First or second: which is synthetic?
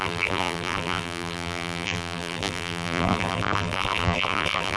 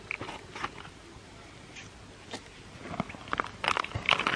first